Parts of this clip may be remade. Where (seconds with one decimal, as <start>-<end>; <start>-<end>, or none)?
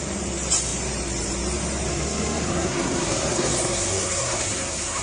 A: 1.9-5.0